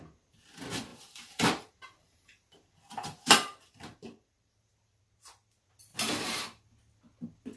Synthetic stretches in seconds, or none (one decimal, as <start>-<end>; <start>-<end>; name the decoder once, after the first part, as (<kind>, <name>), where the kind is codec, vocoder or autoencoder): 0.9-5.0 (vocoder, BigVGAN v2)